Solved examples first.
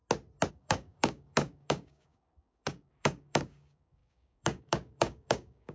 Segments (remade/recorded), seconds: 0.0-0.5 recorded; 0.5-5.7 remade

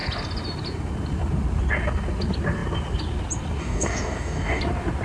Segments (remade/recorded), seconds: 0.0-3.6 recorded; 3.6-4.6 remade; 4.6-5.0 recorded